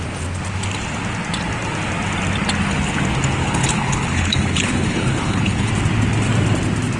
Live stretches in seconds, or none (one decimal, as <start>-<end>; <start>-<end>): 0.0-3.4; 5.7-7.0